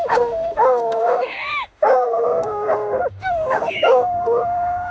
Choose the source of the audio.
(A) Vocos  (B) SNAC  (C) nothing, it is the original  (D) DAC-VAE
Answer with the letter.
D